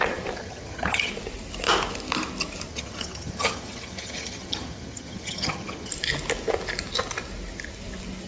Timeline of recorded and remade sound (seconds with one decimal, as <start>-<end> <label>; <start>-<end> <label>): 0.0-0.4 recorded; 0.4-1.1 remade; 1.1-2.7 recorded; 2.7-5.9 remade; 5.9-8.3 recorded